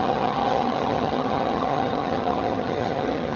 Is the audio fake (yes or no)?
yes